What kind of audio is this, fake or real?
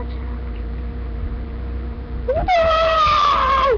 fake